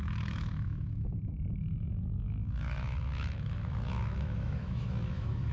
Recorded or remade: remade